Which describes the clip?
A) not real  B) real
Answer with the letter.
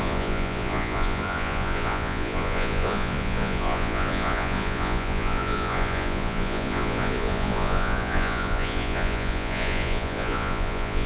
A